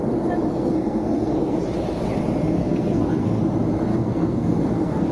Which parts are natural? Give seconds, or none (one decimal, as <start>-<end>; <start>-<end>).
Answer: 0.0-0.5; 1.6-2.6; 3.4-3.9